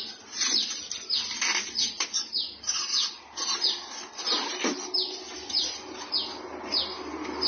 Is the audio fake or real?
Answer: real